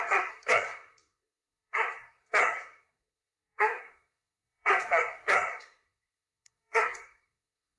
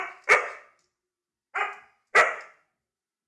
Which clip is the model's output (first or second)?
first